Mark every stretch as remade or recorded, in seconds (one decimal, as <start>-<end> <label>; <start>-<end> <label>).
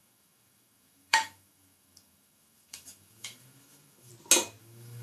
0.0-4.1 remade; 4.1-4.6 recorded; 4.6-5.0 remade